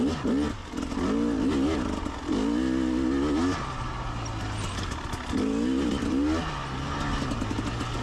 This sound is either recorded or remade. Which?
recorded